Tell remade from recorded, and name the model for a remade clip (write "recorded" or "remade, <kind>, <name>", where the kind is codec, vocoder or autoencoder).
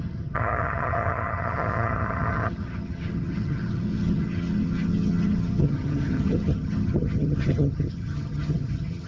remade, vocoder, HiFi-GAN